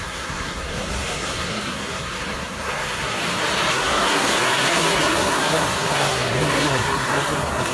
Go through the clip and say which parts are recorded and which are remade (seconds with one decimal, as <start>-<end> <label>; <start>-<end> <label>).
0.0-3.2 remade; 3.2-3.7 recorded; 3.7-7.7 remade